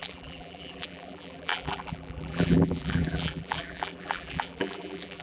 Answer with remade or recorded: remade